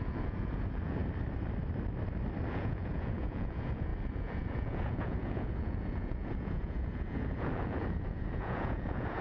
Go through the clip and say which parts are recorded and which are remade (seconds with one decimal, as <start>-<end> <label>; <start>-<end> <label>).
0.0-1.0 remade; 1.0-2.5 recorded; 2.5-9.2 remade